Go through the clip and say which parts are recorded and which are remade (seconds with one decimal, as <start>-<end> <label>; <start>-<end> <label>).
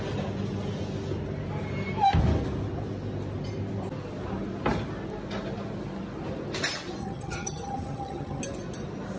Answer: 0.0-7.0 recorded; 7.0-8.4 remade; 8.4-9.2 recorded